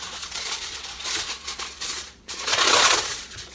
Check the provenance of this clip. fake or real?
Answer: fake